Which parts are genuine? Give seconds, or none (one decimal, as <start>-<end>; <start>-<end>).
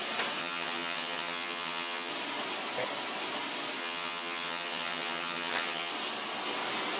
0.0-0.4; 2.1-3.8; 5.9-7.0